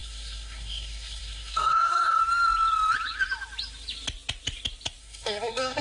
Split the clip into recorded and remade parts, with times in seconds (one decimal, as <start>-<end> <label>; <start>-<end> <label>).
0.0-2.2 remade; 2.2-5.0 recorded; 5.0-5.8 remade